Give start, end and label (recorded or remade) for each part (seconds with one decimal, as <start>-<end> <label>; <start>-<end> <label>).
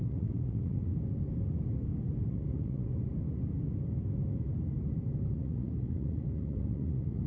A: 0.0-0.9 remade; 0.9-2.3 recorded; 2.3-2.9 remade; 2.9-5.3 recorded; 5.3-7.3 remade